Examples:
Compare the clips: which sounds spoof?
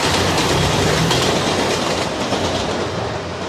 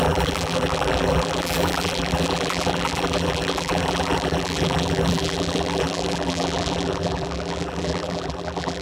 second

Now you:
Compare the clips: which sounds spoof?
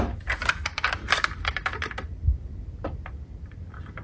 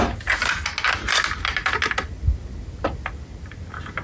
first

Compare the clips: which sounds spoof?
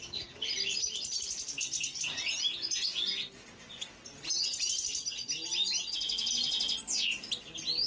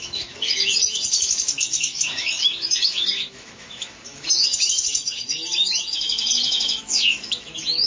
second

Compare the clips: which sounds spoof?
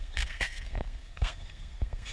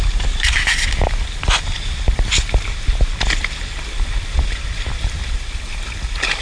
first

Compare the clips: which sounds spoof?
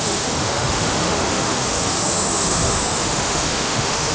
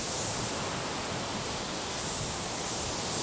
first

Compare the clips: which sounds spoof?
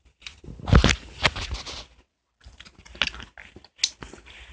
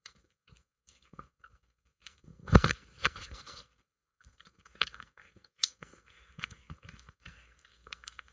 second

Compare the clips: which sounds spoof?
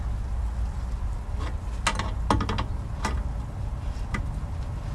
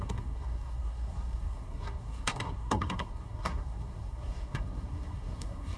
second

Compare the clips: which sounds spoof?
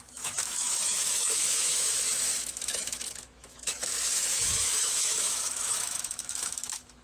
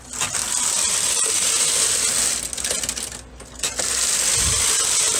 first